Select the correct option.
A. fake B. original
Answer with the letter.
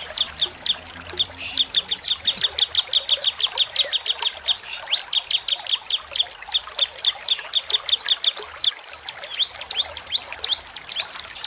B